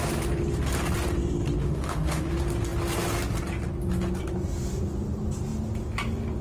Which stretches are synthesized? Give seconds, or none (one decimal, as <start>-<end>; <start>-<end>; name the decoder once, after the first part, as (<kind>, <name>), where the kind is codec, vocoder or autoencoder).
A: 1.6-2.3 (autoencoder, DAC-VAE)